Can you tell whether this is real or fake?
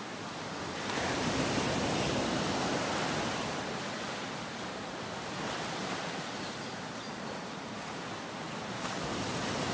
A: real